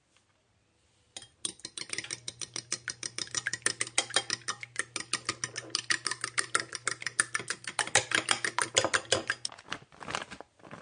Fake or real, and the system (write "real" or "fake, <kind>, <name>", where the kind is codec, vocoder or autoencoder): real